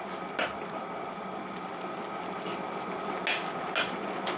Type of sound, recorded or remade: recorded